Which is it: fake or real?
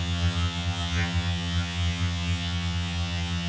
fake